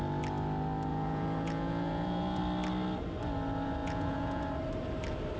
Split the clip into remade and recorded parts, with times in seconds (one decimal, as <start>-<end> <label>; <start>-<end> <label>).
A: 0.0-0.9 recorded; 0.9-2.4 remade; 2.4-3.8 recorded; 3.8-4.4 remade; 4.4-5.4 recorded